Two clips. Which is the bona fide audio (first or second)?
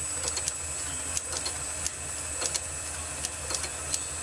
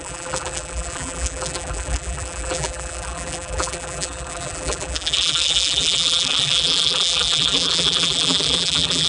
first